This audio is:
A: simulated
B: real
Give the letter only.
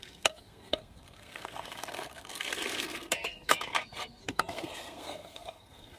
A